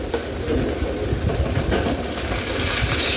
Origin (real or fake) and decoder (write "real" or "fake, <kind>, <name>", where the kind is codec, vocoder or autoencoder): fake, vocoder, BigVGAN v2